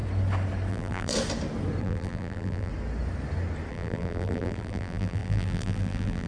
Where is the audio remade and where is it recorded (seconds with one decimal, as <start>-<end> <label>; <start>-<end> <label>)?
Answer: 0.0-0.7 recorded; 0.7-1.1 remade; 1.1-1.8 recorded; 1.8-2.7 remade; 2.7-3.7 recorded; 3.7-6.3 remade